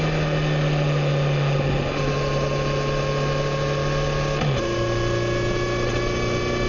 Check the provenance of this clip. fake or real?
real